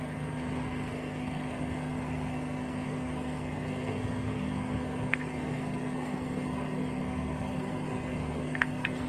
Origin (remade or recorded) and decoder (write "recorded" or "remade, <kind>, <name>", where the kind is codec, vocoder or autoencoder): remade, codec, SNAC